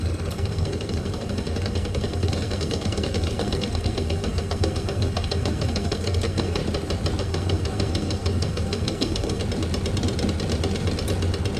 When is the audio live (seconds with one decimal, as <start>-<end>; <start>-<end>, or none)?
6.6-7.2; 9.4-11.6